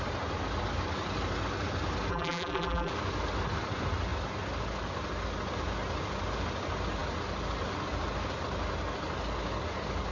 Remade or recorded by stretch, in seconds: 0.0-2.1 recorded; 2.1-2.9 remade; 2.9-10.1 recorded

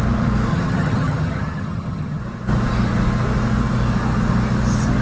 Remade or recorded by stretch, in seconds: 0.0-0.5 recorded; 0.5-2.2 remade; 2.2-5.0 recorded

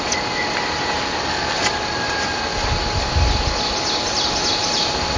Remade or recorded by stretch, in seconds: 0.0-5.2 recorded